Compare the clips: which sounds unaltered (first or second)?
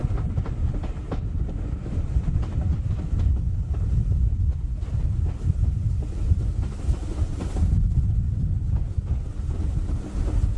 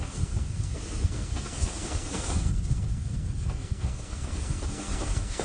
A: first